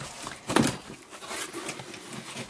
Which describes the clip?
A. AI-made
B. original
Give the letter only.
B